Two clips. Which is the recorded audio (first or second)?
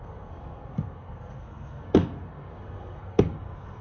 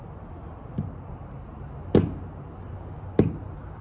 second